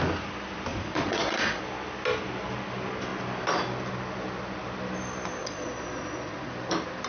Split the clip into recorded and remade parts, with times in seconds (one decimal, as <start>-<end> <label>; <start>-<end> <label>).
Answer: 0.0-0.7 recorded; 0.7-1.6 remade; 1.6-5.4 recorded; 5.4-6.5 remade; 6.5-7.1 recorded